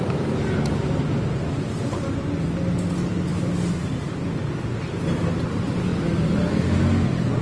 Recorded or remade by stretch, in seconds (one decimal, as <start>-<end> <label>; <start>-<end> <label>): 0.0-7.4 recorded